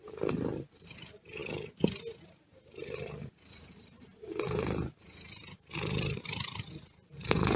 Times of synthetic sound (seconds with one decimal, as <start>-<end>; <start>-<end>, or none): 0.0-1.4; 2.2-7.6